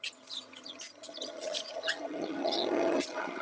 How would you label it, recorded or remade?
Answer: remade